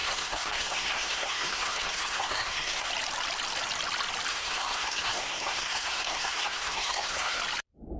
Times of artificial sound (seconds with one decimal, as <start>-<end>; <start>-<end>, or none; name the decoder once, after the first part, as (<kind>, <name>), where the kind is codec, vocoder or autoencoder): 0.0-2.9 (codec, SNAC); 4.3-7.4